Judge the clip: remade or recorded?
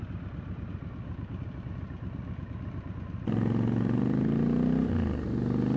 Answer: recorded